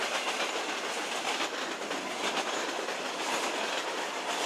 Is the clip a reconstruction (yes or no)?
no